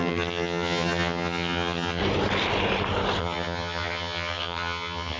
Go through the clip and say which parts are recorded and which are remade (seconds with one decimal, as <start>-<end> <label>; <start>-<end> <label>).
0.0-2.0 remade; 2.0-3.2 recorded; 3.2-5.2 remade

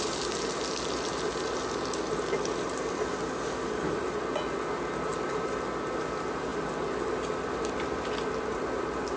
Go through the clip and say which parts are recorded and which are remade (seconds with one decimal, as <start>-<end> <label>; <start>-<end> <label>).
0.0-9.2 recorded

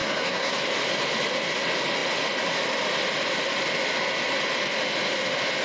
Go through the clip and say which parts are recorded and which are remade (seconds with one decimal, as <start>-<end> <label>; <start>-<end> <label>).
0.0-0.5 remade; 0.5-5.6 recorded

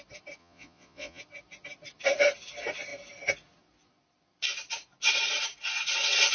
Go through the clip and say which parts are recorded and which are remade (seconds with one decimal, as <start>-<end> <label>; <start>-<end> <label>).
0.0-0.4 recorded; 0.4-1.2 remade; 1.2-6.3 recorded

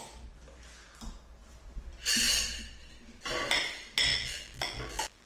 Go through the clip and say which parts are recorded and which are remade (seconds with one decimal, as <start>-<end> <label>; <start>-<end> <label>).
0.0-4.1 recorded; 4.1-5.3 remade